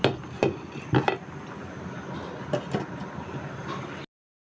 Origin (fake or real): real